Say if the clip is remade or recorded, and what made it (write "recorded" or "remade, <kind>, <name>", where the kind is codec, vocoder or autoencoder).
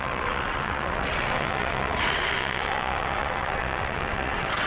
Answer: remade, vocoder, WaveNeXt